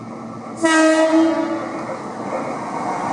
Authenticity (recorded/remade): recorded